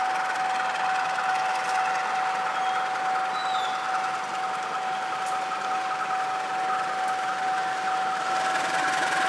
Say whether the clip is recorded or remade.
recorded